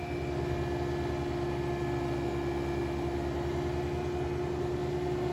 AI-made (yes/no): no